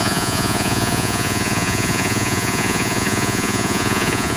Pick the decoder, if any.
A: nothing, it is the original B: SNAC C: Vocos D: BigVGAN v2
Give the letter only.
C